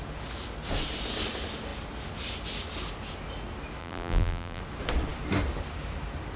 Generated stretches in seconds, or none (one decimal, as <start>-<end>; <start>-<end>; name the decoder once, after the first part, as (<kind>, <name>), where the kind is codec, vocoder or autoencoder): 3.8-4.6 (vocoder, BigVGAN v2)